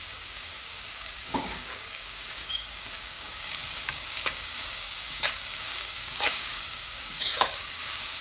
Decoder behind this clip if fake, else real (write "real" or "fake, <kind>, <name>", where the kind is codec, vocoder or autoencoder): fake, codec, DAC